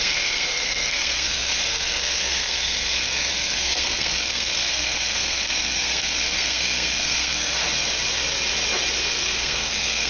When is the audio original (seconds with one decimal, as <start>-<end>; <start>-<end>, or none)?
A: 7.6-9.0